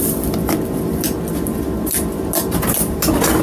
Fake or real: real